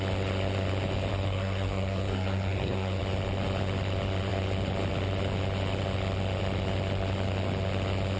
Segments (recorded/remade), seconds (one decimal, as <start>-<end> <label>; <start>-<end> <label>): 0.0-1.1 recorded; 1.1-3.0 remade; 3.0-8.2 recorded